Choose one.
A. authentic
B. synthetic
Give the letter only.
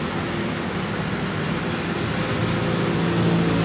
A